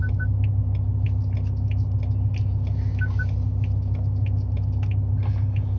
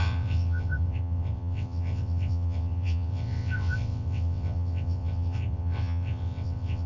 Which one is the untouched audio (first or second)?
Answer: first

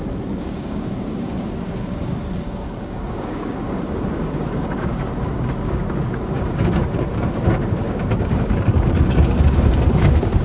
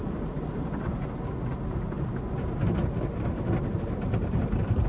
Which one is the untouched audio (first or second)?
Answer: second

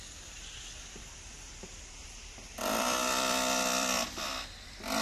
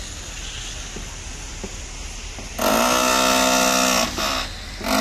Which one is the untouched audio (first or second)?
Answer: second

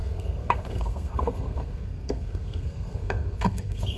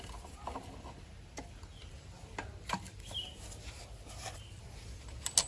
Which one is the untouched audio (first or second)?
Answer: second